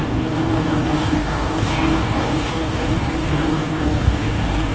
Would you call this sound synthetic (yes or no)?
yes